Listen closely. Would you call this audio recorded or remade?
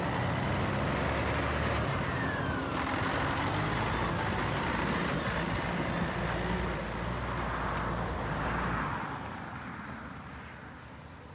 recorded